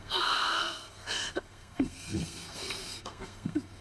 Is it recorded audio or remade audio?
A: remade